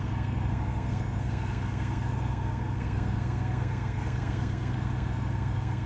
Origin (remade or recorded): remade